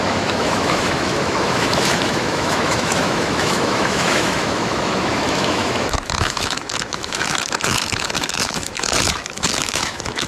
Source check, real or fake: fake